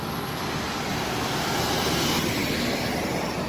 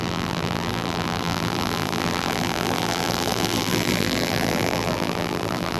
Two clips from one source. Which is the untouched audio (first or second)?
first